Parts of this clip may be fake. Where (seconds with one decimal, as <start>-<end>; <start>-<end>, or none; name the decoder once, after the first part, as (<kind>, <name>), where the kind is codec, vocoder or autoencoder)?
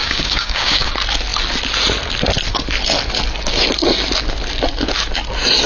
0.0-0.9 (codec, DAC)